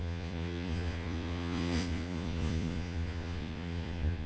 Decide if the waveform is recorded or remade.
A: remade